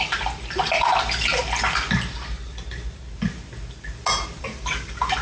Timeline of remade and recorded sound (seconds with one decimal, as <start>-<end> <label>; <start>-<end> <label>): 0.0-5.2 recorded